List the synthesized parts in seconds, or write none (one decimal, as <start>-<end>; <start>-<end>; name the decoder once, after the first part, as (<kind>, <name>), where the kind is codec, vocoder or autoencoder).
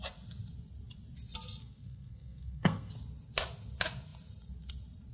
1.6-2.9 (codec, SNAC)